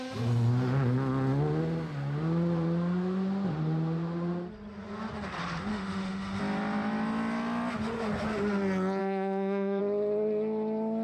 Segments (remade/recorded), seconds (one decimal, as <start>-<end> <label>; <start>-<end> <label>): 0.0-5.7 recorded; 5.7-6.4 remade; 6.4-9.0 recorded; 9.0-9.8 remade; 9.8-11.0 recorded